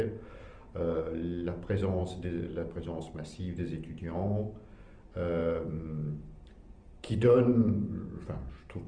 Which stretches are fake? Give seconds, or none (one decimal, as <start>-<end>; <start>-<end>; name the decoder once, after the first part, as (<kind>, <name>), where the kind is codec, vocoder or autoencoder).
5.4-8.4 (vocoder, BigVGAN v2)